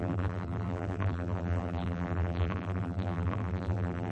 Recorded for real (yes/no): no